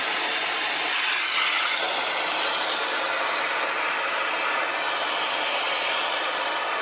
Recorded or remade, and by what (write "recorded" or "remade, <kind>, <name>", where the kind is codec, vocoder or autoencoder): recorded